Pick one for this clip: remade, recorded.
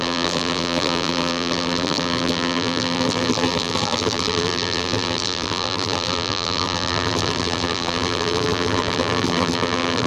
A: remade